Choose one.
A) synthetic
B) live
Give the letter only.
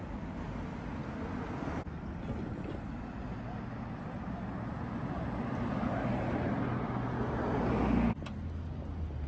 B